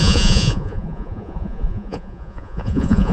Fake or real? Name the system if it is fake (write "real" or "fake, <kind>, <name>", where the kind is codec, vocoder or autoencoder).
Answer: fake, vocoder, Vocos